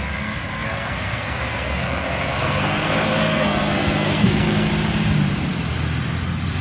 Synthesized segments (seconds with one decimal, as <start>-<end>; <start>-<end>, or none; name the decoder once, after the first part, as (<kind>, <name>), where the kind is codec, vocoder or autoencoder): 0.0-4.7 (codec, SNAC)